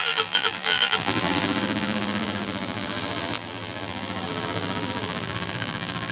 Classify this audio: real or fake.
fake